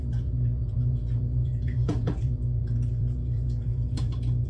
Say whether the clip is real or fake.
fake